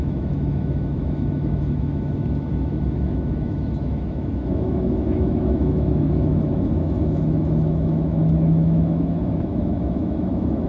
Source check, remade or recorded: remade